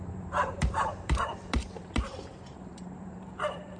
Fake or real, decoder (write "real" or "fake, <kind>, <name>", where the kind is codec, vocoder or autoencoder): fake, vocoder, BigVGAN v2